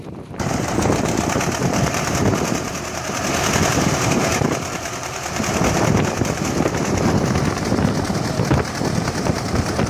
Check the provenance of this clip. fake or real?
fake